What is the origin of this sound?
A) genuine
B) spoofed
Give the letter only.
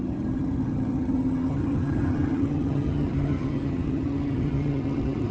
B